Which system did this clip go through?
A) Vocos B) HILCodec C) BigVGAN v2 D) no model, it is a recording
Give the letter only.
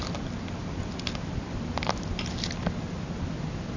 D